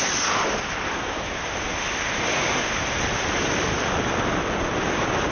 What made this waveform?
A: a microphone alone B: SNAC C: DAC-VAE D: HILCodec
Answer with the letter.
A